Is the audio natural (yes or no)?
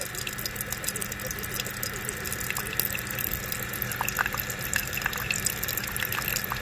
yes